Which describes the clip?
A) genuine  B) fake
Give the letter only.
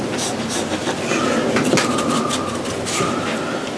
A